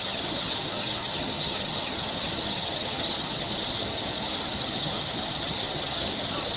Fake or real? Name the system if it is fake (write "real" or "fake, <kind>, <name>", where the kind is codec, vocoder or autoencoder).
fake, vocoder, HiFi-GAN